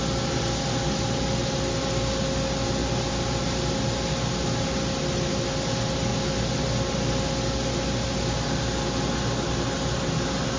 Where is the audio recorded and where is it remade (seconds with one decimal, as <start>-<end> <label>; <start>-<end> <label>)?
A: 0.0-10.6 recorded